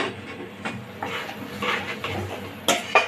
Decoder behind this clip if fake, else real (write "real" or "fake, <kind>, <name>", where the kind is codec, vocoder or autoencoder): real